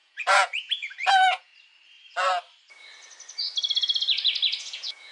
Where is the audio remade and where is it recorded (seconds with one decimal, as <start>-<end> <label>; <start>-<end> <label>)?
0.0-1.5 remade; 1.5-4.6 recorded; 4.6-5.1 remade